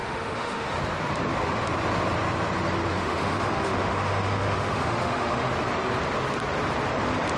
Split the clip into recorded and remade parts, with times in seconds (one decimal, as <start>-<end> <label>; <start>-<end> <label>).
0.0-0.7 remade; 0.7-2.9 recorded; 2.9-5.5 remade; 5.5-7.4 recorded

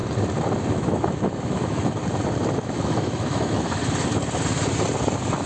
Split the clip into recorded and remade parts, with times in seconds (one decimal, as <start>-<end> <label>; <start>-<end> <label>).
0.0-0.7 recorded; 0.7-2.0 remade; 2.0-2.6 recorded; 2.6-3.8 remade; 3.8-5.5 recorded

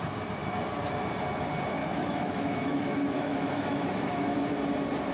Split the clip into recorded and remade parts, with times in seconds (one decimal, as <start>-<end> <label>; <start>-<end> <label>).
0.0-1.8 recorded; 1.8-4.5 remade; 4.5-5.1 recorded